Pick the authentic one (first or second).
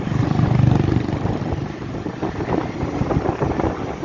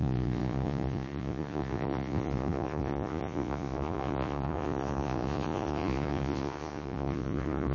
first